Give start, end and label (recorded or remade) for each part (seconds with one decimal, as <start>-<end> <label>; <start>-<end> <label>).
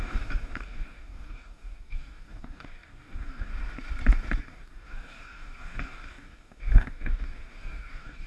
0.0-3.5 remade; 3.5-4.4 recorded; 4.4-8.3 remade